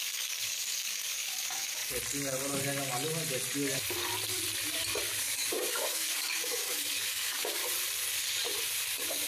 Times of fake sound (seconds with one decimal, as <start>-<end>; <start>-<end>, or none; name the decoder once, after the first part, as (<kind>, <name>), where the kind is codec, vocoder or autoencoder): 0.0-1.8 (codec, DAC); 5.2-7.6; 8.9-9.3